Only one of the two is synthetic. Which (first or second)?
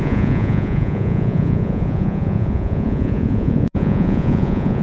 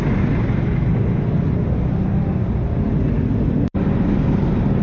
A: first